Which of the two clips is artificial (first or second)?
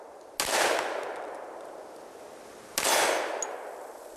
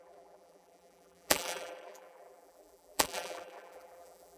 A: second